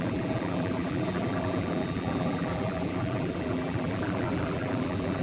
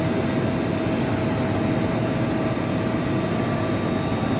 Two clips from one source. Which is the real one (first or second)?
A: second